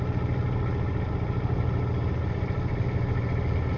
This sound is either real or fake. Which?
real